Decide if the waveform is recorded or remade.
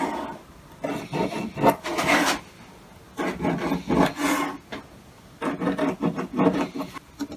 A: recorded